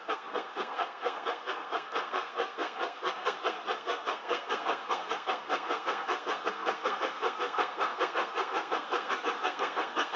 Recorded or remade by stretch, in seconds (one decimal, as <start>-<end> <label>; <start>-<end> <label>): 0.0-10.2 remade